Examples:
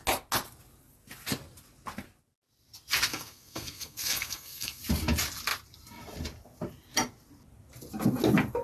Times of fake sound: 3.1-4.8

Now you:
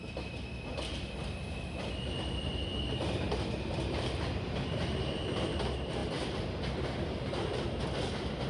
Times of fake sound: none

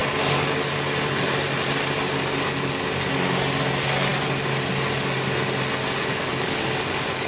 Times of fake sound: none